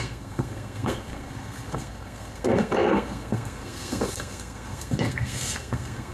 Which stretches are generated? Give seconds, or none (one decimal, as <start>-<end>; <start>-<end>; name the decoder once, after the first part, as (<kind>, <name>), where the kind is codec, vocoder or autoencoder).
0.0-6.1 (codec, SNAC)